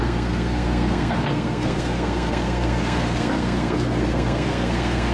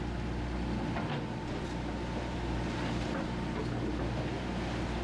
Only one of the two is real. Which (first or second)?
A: second